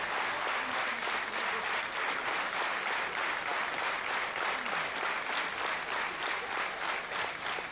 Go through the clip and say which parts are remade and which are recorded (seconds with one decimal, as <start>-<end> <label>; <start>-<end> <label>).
0.0-7.7 recorded